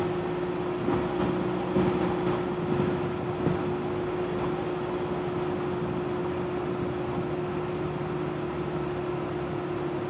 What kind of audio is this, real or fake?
real